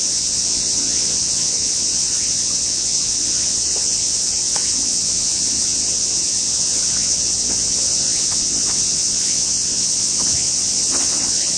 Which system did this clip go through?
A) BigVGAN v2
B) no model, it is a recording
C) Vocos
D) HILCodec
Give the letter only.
C